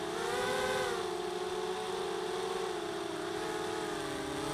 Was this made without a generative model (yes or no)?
yes